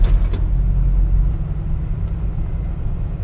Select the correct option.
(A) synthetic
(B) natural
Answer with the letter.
B